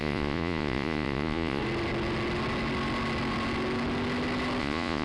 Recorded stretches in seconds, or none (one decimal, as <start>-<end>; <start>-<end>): 1.6-4.6